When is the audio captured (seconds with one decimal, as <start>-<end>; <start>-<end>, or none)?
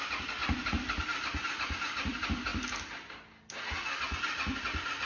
2.5-5.1